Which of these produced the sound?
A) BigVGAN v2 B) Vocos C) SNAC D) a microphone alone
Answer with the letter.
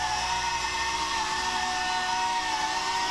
D